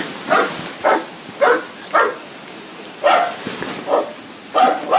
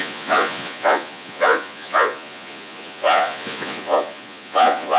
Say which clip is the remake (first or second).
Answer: second